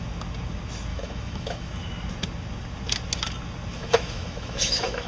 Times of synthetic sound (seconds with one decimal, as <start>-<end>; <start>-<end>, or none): 0.9-1.7; 3.7-5.1